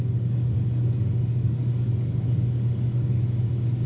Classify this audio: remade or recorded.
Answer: remade